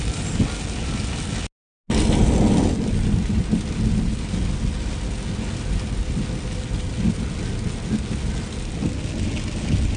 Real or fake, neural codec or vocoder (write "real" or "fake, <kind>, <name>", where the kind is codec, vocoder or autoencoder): real